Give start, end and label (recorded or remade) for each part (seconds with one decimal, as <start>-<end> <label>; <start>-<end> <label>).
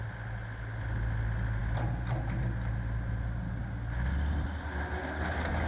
0.0-5.7 recorded